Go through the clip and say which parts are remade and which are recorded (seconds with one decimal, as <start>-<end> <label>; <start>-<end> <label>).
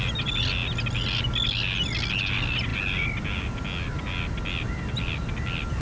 0.0-5.8 recorded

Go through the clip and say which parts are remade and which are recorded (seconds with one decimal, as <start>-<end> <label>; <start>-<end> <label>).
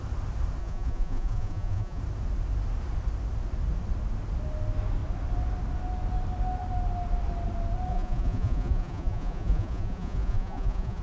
0.0-0.6 recorded; 0.6-2.0 remade; 2.0-7.9 recorded; 7.9-11.0 remade